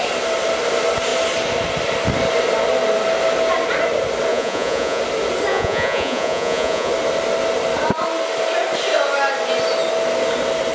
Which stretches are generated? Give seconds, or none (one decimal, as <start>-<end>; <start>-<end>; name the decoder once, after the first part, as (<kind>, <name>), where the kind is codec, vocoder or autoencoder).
4.3-5.0 (vocoder, Vocos); 5.5-6.9